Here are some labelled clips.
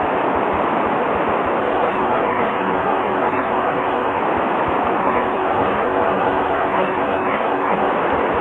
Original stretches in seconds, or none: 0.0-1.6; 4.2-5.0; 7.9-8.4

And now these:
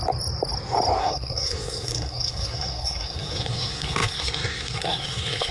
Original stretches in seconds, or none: 0.0-1.0